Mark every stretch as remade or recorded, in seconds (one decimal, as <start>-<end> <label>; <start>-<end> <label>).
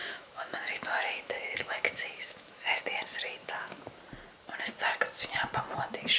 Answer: 0.0-2.8 remade; 2.8-3.4 recorded; 3.4-4.0 remade; 4.0-6.2 recorded